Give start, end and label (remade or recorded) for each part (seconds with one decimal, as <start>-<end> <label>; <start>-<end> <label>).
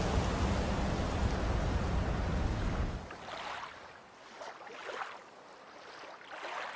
0.0-6.8 recorded